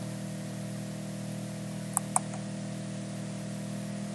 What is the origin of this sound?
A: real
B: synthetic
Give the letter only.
A